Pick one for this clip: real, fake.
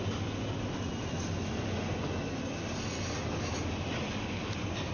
real